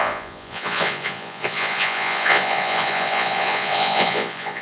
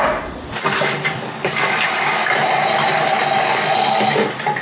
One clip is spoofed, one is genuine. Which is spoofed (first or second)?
first